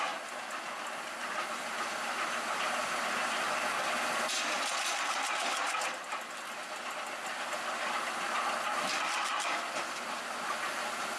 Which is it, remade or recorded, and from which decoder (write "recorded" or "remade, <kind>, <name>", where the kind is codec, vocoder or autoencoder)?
recorded